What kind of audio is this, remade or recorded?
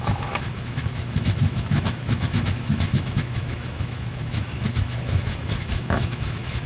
remade